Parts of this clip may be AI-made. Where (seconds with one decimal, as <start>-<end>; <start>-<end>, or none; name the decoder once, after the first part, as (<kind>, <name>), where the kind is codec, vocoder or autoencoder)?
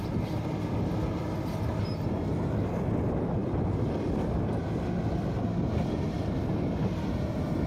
none